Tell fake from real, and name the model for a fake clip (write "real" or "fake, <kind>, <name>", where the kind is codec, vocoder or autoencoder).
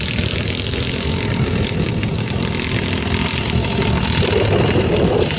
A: real